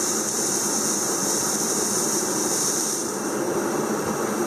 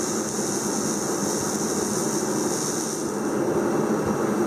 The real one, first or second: second